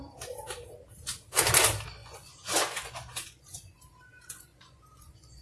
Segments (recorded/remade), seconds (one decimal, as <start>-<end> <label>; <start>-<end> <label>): 0.0-2.0 recorded; 2.0-5.4 remade